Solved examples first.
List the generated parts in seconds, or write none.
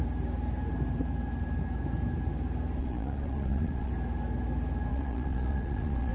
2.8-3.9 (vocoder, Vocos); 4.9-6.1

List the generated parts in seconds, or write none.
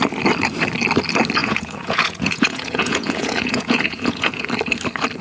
1.4-4.5 (vocoder, Vocos)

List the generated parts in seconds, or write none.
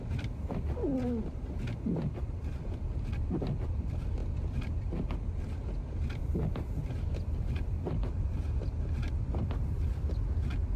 none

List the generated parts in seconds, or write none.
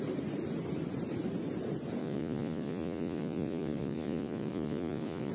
2.0-5.3 (vocoder, Vocos)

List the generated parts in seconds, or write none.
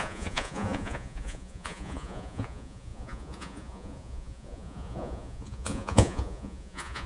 0.0-7.1 (vocoder, Vocos)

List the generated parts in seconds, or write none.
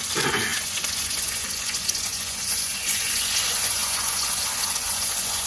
0.0-5.5 (vocoder, Vocos)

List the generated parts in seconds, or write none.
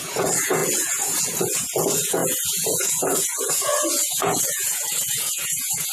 0.0-5.9 (vocoder, Vocos)